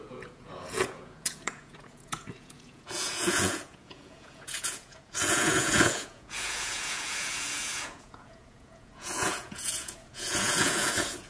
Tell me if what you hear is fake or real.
fake